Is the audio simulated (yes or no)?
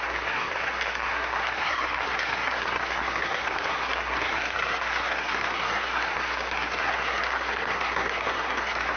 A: yes